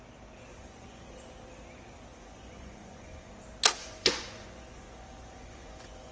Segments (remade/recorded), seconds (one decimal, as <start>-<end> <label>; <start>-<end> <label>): 0.0-0.5 recorded; 0.5-1.3 remade; 1.3-2.1 recorded; 2.1-3.3 remade; 3.3-3.8 recorded; 3.8-6.1 remade